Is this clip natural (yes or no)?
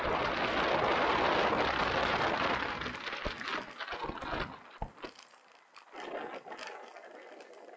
yes